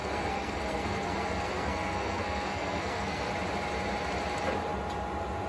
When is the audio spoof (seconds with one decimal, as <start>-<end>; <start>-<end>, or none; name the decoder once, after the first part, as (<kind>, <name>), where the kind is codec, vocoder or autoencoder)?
0.0-3.3 (codec, SNAC)